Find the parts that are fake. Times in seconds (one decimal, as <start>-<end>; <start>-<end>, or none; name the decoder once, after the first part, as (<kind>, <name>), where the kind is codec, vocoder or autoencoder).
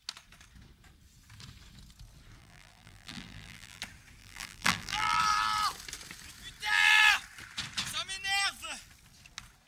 2.4-3.8 (vocoder, BigVGAN v2); 4.2-5.2